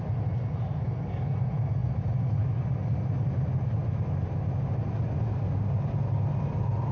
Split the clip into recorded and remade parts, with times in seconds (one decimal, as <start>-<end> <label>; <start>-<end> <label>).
0.0-6.9 recorded